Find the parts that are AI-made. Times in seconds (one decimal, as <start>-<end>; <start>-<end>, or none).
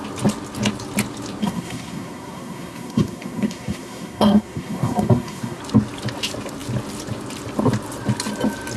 1.4-5.6